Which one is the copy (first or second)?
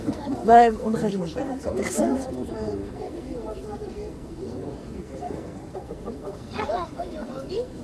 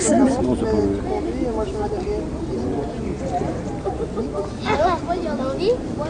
first